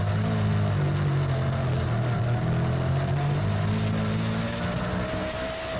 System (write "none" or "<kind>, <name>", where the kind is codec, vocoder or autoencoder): none